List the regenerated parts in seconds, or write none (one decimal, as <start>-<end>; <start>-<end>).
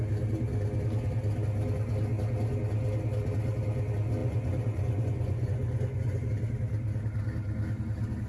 4.2-6.3